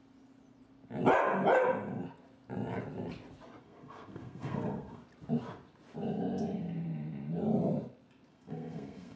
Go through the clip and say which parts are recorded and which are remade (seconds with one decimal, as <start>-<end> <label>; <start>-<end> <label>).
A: 0.0-3.6 recorded; 3.6-5.0 remade; 5.0-8.3 recorded; 8.3-9.2 remade